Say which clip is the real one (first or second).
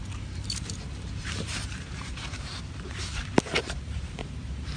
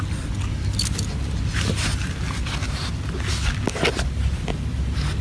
second